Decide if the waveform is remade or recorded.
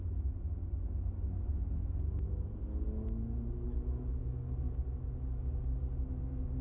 recorded